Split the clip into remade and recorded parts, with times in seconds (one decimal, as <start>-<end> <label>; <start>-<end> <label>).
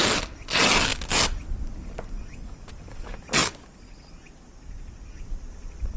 0.0-6.0 recorded